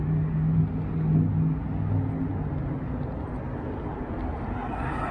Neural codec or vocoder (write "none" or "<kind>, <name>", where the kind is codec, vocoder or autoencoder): none